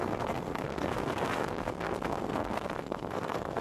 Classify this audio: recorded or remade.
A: remade